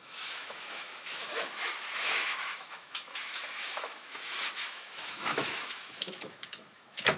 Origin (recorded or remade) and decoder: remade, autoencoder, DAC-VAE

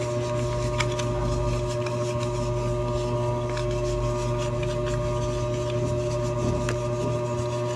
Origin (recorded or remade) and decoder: recorded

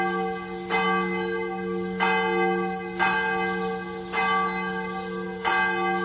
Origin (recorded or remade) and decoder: recorded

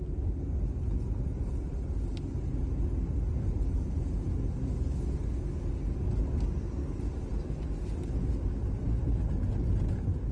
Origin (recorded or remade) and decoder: recorded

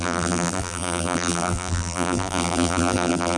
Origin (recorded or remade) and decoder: remade, vocoder, BigVGAN v2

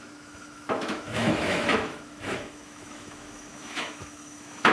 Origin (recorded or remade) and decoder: remade, autoencoder, DAC-VAE